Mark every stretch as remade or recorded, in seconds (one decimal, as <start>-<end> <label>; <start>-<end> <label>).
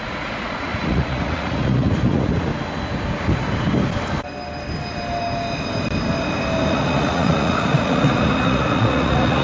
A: 0.0-2.5 remade; 2.5-6.7 recorded; 6.7-9.4 remade